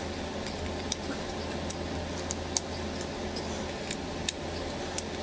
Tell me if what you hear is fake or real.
real